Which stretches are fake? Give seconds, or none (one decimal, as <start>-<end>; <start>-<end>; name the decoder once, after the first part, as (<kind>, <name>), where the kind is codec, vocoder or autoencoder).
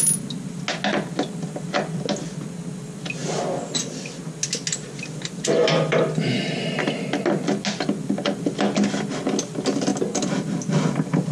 none